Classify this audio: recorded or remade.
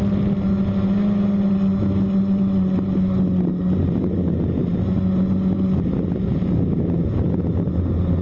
recorded